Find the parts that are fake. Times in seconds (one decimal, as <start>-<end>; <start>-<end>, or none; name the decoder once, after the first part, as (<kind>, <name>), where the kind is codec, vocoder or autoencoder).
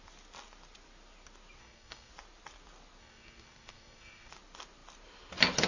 1.6-2.1 (codec, SNAC); 3.0-4.3